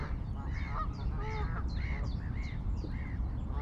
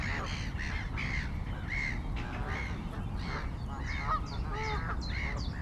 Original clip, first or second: second